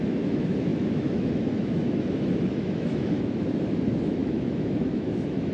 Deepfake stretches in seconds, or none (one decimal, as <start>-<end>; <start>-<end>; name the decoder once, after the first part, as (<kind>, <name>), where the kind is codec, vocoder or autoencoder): 0.0-5.5 (autoencoder, DAC-VAE)